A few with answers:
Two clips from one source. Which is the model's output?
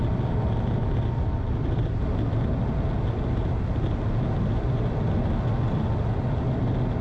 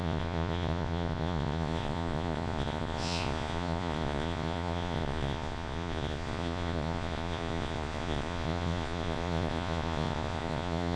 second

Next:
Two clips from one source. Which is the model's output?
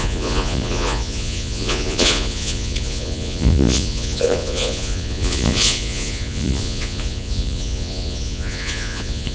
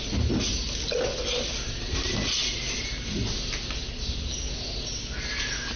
first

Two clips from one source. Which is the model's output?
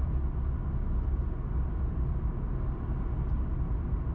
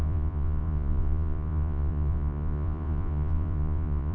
second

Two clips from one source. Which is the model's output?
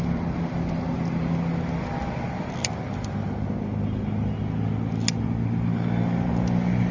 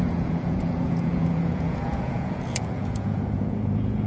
second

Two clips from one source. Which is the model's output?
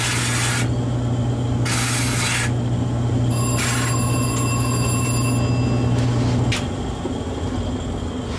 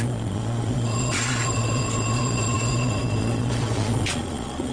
second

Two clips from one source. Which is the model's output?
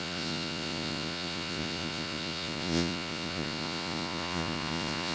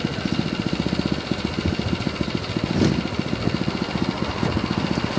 first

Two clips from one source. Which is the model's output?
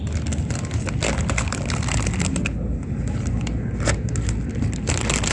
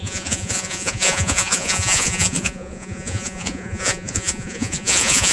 second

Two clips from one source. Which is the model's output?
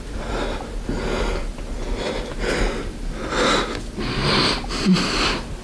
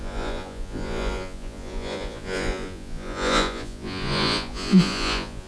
second